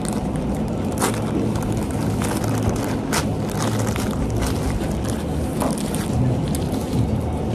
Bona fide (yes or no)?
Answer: yes